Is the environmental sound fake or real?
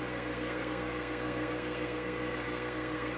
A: fake